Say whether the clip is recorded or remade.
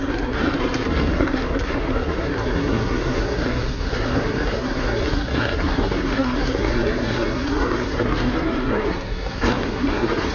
remade